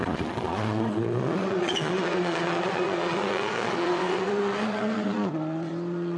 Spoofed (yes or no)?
yes